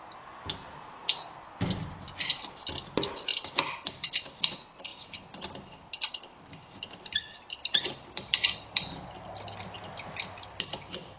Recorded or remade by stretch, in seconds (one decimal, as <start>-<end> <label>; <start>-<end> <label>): 0.0-1.0 recorded; 1.0-2.5 remade; 2.5-3.3 recorded; 3.3-4.1 remade; 4.1-4.9 recorded; 4.9-9.1 remade; 9.1-11.2 recorded